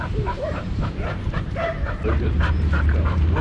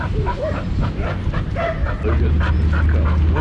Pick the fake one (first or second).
first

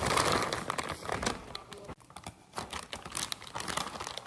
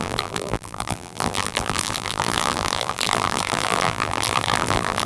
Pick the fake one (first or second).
second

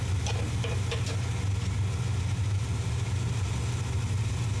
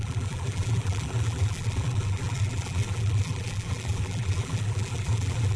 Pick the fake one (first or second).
second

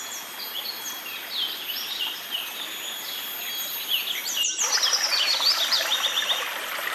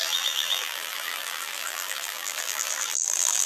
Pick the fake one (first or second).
second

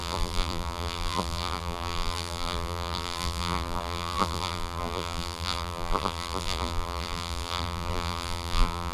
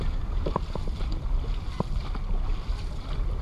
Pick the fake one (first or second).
first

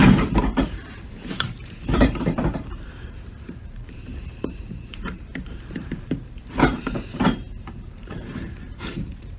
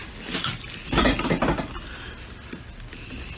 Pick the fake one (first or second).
first